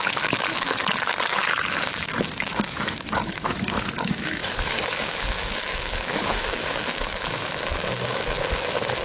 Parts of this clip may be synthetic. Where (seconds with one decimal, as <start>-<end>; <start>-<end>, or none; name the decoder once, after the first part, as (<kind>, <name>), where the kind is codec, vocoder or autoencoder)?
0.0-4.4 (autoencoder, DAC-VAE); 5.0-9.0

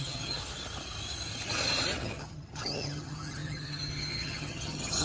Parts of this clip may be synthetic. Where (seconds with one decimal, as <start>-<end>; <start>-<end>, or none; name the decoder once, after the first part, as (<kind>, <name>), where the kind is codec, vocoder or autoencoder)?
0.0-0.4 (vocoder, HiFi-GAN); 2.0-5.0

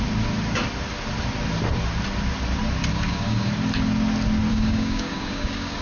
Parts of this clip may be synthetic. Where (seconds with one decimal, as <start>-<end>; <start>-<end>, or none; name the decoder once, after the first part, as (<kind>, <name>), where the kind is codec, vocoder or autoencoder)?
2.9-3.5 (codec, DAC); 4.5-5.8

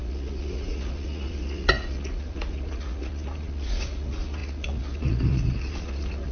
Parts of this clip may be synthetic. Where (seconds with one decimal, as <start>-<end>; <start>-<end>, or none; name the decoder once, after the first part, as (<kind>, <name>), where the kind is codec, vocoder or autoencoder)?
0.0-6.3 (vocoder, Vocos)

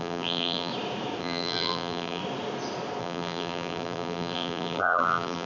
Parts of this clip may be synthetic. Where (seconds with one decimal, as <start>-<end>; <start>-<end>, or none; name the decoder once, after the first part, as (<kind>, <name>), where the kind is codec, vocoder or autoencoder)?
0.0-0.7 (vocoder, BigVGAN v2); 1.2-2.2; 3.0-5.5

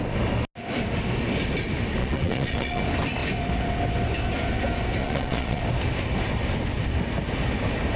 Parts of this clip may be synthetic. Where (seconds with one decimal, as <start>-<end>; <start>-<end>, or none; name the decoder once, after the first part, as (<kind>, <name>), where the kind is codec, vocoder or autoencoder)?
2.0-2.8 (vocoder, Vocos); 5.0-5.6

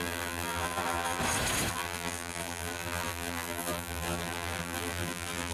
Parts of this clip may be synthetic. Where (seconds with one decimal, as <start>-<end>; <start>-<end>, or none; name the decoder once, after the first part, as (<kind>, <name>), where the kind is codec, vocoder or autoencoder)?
0.0-1.2 (vocoder, BigVGAN v2); 1.7-5.5

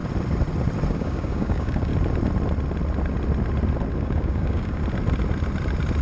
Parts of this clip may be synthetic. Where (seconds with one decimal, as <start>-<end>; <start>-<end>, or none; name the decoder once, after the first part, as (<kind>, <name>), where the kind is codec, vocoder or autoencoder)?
0.9-1.9 (codec, DAC); 4.0-4.8